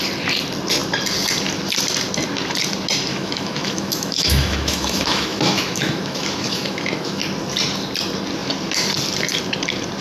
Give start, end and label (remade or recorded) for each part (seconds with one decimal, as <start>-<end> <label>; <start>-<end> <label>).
0.0-3.1 recorded; 3.1-7.2 remade; 7.2-10.0 recorded